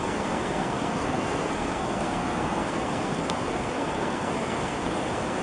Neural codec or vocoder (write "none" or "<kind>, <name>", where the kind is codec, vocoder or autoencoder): codec, SNAC